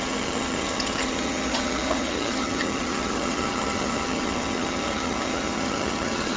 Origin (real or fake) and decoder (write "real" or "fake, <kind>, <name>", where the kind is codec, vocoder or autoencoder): fake, vocoder, HiFi-GAN